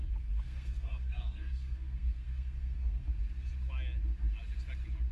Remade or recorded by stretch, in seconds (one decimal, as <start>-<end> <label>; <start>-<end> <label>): 0.0-3.1 remade; 3.1-5.1 recorded